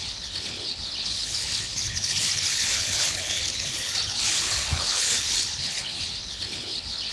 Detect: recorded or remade remade